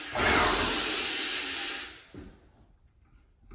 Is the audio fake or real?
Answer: real